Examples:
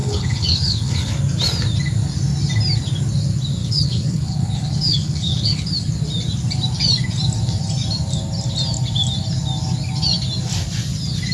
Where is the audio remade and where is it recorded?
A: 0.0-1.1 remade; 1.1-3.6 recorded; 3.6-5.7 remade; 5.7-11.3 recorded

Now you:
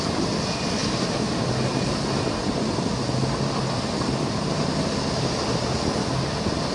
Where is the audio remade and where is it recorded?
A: 0.0-6.7 recorded

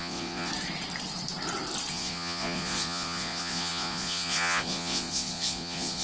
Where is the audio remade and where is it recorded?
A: 0.0-0.5 remade; 0.5-1.9 recorded; 1.9-6.0 remade

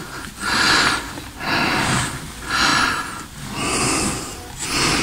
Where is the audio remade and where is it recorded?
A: 0.0-5.0 recorded

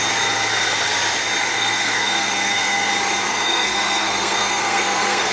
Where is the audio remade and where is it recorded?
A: 0.0-1.5 recorded; 1.5-2.9 remade; 2.9-3.3 recorded; 3.3-5.3 remade

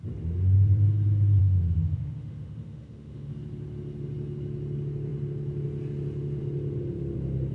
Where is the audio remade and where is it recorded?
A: 0.0-1.4 recorded; 1.4-3.3 remade; 3.3-7.5 recorded